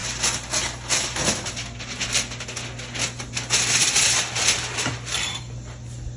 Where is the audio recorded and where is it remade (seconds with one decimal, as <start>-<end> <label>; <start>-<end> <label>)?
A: 0.0-6.2 recorded